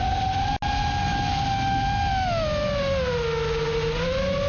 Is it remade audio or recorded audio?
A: recorded